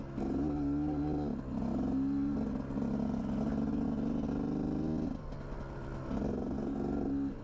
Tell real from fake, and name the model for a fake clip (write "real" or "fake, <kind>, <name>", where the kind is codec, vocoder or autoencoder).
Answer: real